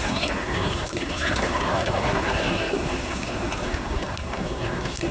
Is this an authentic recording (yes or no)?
no